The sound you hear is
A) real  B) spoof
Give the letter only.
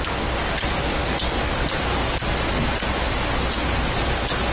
A